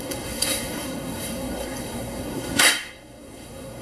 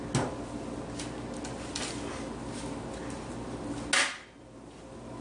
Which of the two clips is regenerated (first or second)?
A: first